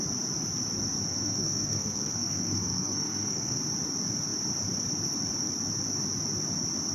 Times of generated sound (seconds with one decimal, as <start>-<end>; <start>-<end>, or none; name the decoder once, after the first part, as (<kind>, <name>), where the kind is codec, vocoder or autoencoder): 1.1-3.6 (codec, SNAC)